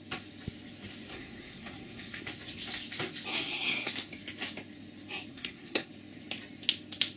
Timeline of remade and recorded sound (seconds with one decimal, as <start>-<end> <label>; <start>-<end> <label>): 0.0-1.1 recorded; 1.1-2.2 remade; 2.2-3.3 recorded; 3.3-3.9 remade; 3.9-5.3 recorded; 5.3-5.9 remade; 5.9-7.2 recorded